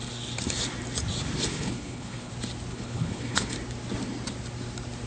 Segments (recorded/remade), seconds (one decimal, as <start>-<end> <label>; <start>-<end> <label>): 0.0-1.5 recorded; 1.5-2.3 remade; 2.3-2.7 recorded; 2.7-3.5 remade; 3.5-5.1 recorded